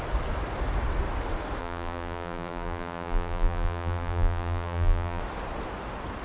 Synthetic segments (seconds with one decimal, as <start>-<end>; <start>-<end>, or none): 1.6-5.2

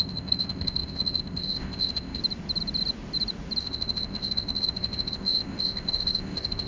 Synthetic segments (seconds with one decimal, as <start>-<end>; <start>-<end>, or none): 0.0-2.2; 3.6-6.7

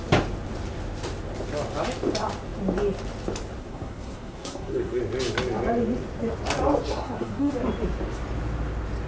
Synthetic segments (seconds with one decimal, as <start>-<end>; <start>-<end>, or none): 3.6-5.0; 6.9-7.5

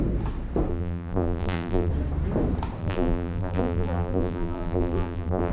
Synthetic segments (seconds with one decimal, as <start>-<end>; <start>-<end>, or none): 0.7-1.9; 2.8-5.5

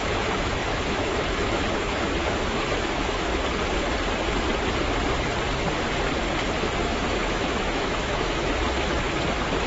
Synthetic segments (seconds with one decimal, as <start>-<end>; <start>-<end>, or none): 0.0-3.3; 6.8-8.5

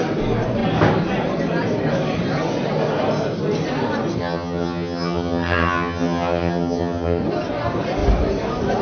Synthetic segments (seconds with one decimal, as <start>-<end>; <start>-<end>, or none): 4.2-7.2